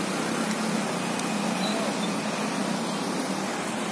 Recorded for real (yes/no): yes